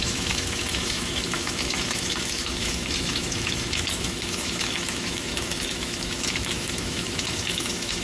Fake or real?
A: fake